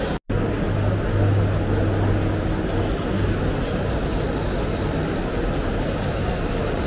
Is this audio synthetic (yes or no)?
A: no